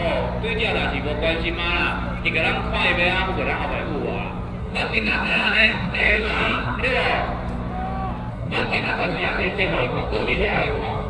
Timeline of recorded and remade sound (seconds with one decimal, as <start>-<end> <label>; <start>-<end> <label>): 0.0-4.6 recorded; 4.6-6.8 remade; 6.8-8.3 recorded; 8.3-11.1 remade